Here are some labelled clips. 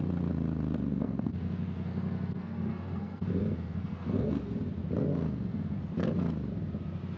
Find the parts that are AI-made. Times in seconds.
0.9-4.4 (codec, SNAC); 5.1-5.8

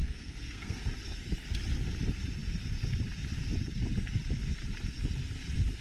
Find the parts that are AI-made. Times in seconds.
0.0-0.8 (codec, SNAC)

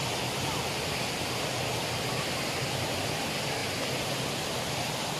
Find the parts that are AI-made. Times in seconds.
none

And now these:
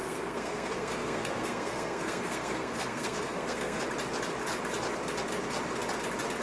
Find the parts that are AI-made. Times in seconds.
0.0-3.8 (codec, SNAC)